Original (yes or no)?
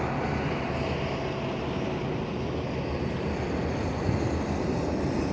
yes